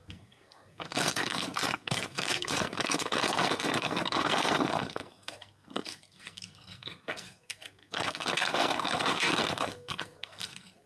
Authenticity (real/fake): fake